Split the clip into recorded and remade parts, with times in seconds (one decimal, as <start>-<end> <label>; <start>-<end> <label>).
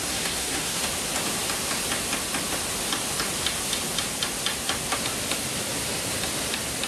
0.0-0.8 remade; 0.8-6.9 recorded